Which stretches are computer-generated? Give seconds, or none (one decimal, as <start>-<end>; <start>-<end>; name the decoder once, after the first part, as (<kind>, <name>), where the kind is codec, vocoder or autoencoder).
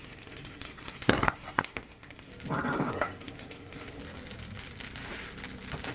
0.0-2.3 (codec, SNAC); 2.9-4.0